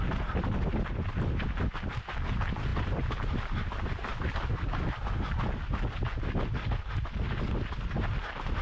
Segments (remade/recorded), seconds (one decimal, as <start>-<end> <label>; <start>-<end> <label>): 0.0-8.6 recorded